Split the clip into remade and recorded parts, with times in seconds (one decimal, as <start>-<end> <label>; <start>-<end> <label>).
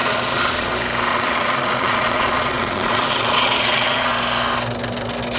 0.0-0.7 remade; 0.7-1.1 recorded; 1.1-4.1 remade; 4.1-5.4 recorded